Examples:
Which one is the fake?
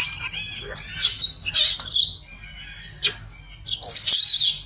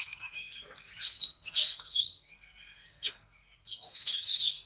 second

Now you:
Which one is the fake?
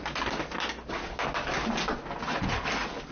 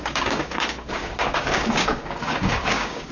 second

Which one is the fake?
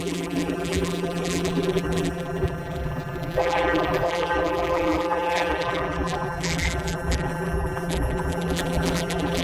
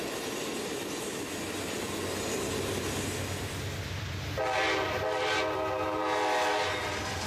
first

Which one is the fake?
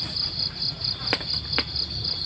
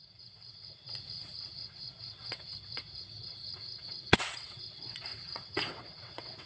second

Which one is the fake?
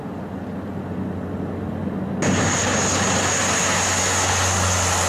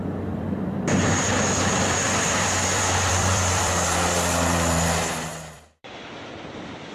second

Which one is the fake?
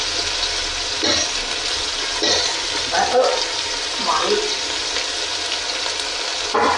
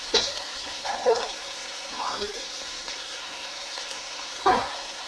second